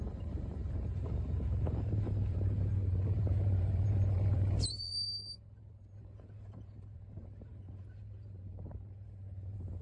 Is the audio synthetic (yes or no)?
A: yes